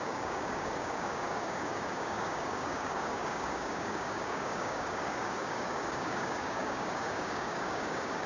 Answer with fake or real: fake